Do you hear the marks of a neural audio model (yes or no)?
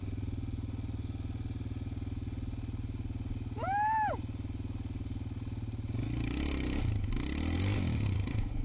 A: no